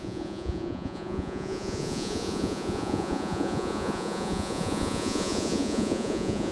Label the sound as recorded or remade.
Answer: remade